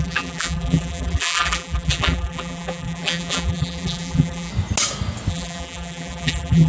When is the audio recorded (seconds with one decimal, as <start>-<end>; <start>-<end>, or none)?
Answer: 4.5-5.3